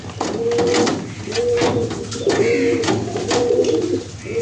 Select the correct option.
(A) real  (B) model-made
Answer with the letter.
A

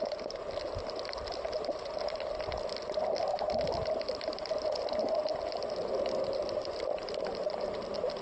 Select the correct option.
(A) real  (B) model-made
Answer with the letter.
A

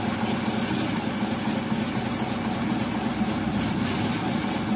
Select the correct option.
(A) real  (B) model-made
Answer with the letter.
A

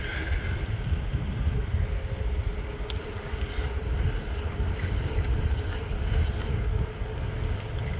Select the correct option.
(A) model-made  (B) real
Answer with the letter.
B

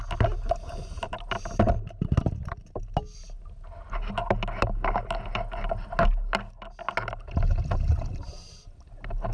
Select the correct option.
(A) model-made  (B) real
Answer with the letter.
B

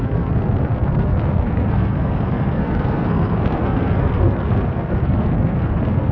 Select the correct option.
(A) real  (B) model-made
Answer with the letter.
B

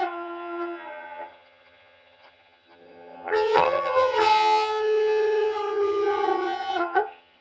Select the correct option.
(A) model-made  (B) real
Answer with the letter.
A